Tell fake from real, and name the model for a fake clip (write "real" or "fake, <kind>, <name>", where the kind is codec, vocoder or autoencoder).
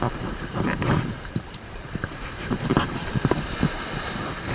fake, vocoder, BigVGAN v2